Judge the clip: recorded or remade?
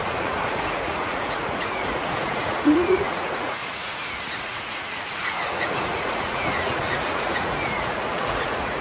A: remade